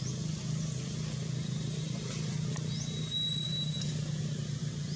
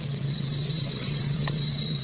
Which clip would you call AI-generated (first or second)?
second